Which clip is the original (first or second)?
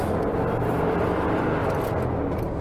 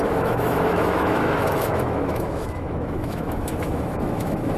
first